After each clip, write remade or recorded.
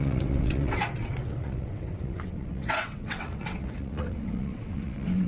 remade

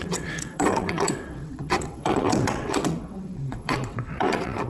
remade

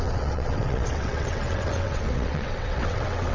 remade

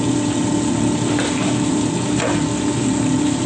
recorded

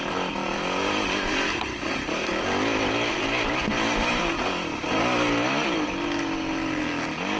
recorded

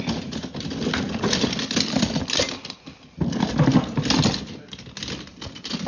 recorded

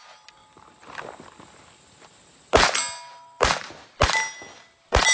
recorded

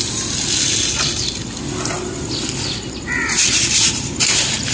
recorded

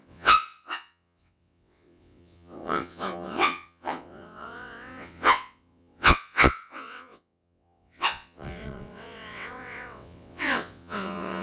remade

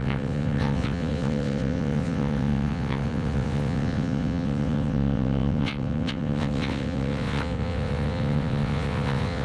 remade